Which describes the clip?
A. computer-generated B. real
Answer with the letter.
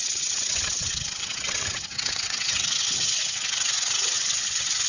A